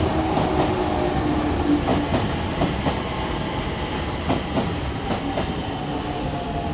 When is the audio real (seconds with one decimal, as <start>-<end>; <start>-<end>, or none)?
0.0-6.7